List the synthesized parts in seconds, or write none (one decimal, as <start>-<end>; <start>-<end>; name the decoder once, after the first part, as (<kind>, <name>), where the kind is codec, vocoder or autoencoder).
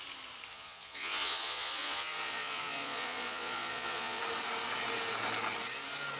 0.5-4.2 (vocoder, Vocos)